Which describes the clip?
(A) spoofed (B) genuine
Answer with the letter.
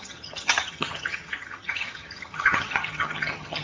A